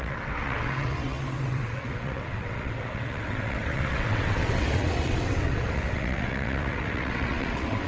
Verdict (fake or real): fake